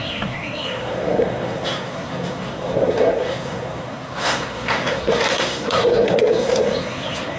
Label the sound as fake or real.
fake